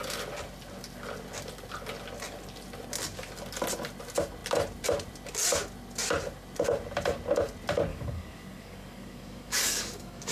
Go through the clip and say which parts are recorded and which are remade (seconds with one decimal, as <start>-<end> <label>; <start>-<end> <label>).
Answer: 0.0-7.9 recorded; 7.9-10.3 remade